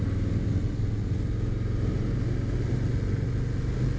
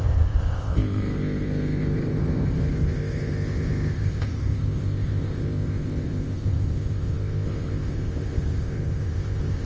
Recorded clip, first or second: first